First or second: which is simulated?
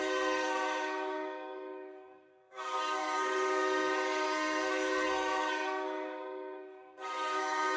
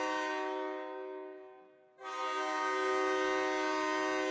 first